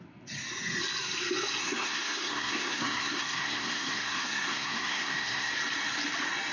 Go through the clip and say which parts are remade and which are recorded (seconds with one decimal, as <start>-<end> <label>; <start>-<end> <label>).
0.0-1.6 recorded; 1.6-5.5 remade; 5.5-6.5 recorded